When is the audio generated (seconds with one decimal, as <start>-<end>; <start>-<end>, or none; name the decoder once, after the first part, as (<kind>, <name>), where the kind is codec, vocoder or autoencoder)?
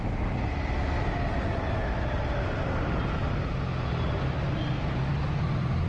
none